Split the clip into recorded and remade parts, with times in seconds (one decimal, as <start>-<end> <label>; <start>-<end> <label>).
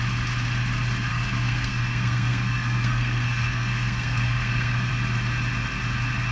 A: 0.0-1.1 recorded; 1.1-4.9 remade; 4.9-6.3 recorded